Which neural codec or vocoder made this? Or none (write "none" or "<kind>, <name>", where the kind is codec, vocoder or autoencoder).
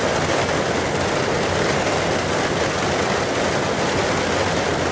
none